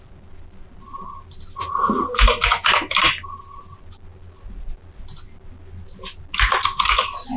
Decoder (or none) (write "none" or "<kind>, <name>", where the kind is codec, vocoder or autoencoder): none